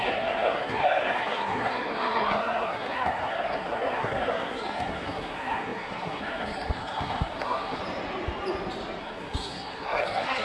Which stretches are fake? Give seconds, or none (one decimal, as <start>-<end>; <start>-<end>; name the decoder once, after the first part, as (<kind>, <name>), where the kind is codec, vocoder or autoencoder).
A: 0.0-7.8 (codec, SNAC); 9.0-10.4